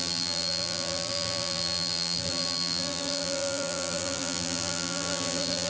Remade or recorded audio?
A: remade